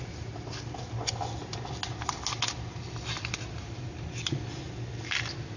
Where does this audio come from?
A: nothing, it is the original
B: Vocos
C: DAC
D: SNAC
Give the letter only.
A